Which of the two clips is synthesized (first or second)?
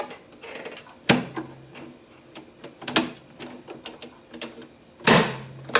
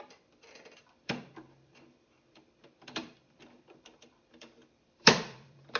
second